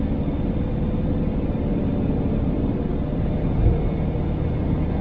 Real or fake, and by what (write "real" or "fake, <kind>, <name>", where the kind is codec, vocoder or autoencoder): real